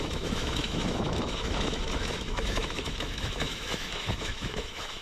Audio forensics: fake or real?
fake